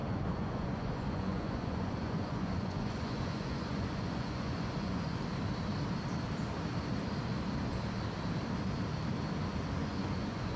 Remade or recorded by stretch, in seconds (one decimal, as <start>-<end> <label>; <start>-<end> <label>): 0.0-5.2 remade; 5.2-9.8 recorded; 9.8-10.6 remade